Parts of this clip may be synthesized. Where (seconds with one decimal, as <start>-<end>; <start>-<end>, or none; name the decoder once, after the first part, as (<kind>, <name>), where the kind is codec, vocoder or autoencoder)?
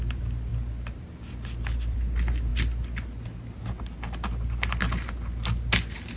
0.0-2.5 (vocoder, BigVGAN v2)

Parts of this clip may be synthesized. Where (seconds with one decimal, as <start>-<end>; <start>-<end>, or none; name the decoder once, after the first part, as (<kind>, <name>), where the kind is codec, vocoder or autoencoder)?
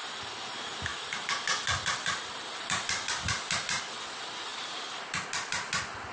0.9-3.8 (vocoder, BigVGAN v2)